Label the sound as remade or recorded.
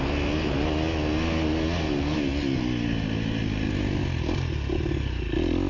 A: recorded